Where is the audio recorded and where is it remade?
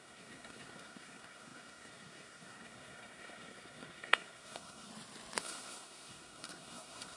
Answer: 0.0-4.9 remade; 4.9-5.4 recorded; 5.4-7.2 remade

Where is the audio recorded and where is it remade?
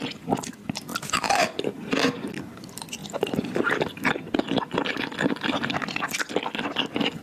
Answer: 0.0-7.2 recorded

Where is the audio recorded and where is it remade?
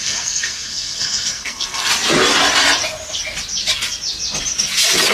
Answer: 0.0-1.9 remade; 1.9-5.1 recorded